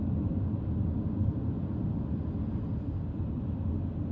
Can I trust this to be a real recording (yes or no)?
yes